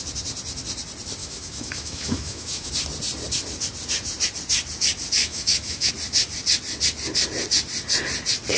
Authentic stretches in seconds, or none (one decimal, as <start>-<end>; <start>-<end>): 0.0-1.2; 2.7-5.2; 5.9-8.6